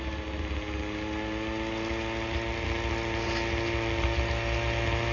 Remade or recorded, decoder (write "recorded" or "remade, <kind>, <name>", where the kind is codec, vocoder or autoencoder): recorded